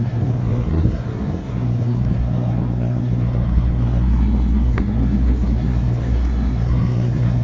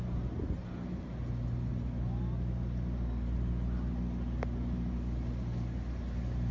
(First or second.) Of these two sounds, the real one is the second